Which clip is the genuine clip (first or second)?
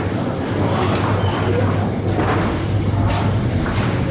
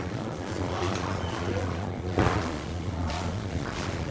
first